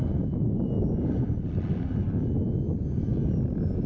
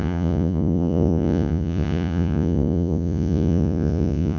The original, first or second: first